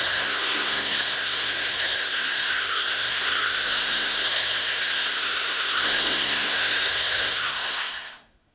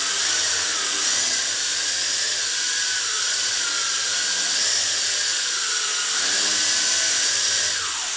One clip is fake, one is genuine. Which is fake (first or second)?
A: first